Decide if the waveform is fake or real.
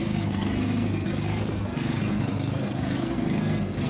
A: fake